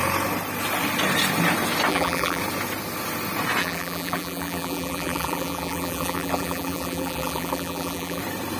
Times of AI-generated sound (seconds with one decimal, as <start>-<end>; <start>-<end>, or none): 1.9-2.4; 3.6-8.2